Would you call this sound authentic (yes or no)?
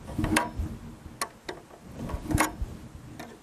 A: yes